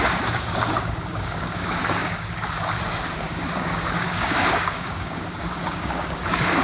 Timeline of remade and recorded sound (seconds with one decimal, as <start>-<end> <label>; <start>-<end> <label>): 0.0-6.6 remade